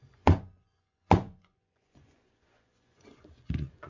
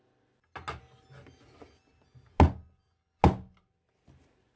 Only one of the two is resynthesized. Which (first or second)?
first